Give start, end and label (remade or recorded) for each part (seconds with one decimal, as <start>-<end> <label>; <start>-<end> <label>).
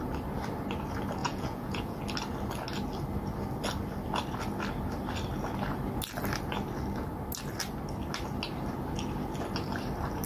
0.0-1.2 recorded; 1.2-2.0 remade; 2.0-10.3 recorded